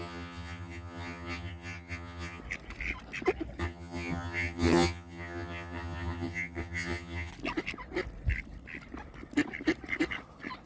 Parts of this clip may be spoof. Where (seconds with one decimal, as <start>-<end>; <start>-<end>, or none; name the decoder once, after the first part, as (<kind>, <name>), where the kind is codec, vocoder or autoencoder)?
0.0-2.4 (vocoder, HiFi-GAN); 3.6-7.3